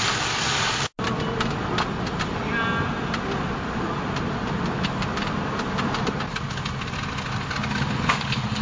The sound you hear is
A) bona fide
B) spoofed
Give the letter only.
A